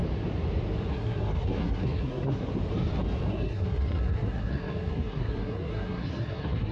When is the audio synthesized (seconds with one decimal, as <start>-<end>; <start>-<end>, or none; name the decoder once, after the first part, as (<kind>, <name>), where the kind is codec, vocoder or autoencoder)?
0.9-2.5 (codec, SNAC); 3.3-6.7